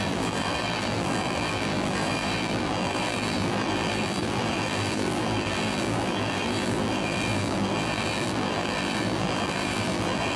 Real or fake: fake